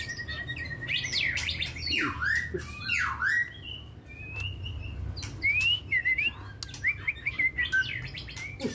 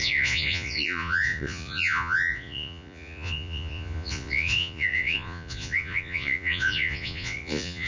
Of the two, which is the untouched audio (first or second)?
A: first